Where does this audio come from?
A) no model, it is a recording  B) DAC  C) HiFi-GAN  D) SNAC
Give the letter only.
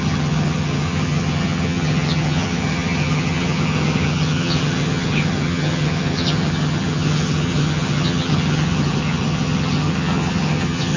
C